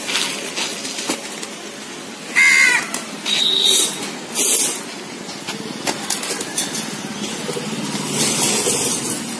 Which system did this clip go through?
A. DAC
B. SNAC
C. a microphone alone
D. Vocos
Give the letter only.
C